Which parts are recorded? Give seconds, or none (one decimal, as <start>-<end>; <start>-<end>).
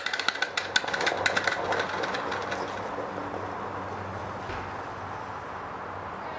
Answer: 0.0-6.4